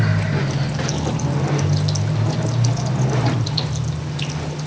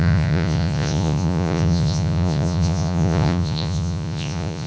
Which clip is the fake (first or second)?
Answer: second